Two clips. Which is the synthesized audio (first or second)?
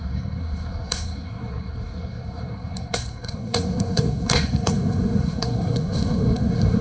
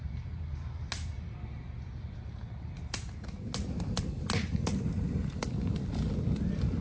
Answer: first